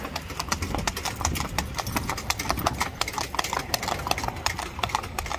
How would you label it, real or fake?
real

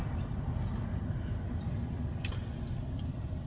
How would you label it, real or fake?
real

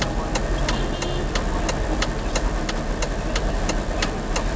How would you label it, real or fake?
real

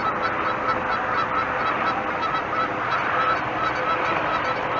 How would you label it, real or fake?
real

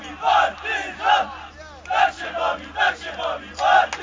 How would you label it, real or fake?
real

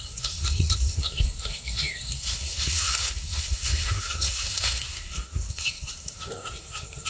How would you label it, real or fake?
fake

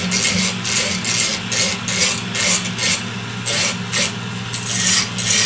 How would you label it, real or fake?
real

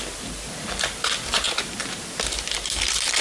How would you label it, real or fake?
fake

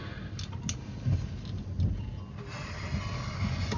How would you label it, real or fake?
real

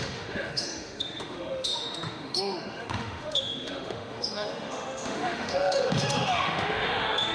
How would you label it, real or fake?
fake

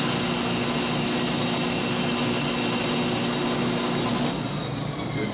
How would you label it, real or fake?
real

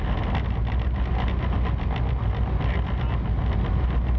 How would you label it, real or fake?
real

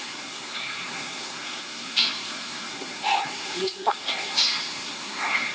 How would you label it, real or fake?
fake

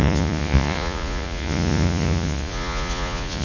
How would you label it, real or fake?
fake